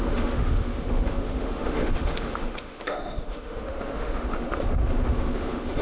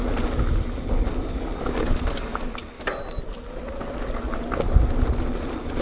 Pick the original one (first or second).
second